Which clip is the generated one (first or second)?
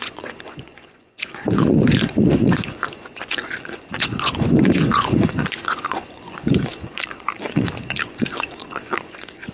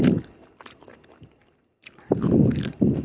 first